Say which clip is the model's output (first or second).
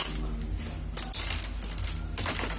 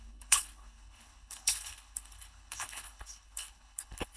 second